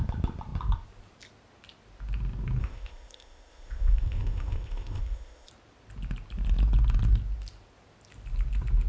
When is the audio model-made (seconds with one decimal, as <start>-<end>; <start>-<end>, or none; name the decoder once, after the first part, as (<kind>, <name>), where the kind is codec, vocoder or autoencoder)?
2.6-5.5 (codec, ZipCodec)